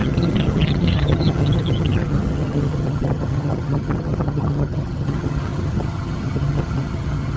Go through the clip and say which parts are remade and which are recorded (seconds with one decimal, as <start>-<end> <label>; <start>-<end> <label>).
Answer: 0.0-7.4 remade